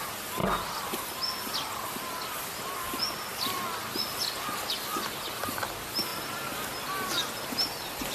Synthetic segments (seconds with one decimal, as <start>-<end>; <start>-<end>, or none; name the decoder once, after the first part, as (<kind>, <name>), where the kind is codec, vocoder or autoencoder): none